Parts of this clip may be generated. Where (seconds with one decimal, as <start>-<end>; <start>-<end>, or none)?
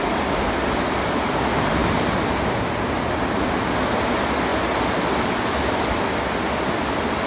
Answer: none